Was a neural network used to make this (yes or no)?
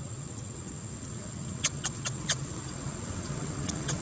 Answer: yes